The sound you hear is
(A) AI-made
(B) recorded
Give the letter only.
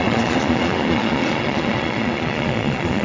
A